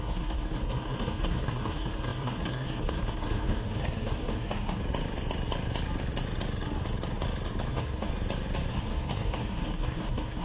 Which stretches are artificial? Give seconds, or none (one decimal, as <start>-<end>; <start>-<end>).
0.0-4.8; 7.7-8.1; 8.7-10.4